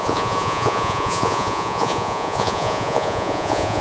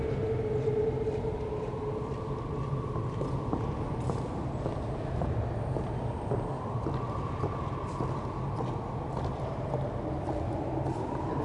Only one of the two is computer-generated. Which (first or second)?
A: first